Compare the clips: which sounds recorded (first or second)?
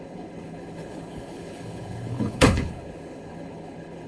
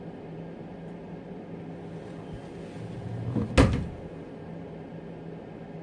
second